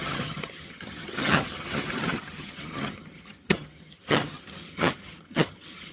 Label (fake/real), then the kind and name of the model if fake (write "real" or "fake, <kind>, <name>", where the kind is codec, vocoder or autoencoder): fake, vocoder, HiFi-GAN